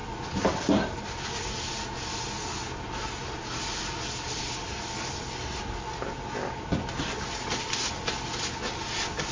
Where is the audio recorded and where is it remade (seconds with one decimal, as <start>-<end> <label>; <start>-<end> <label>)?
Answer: 0.0-9.3 recorded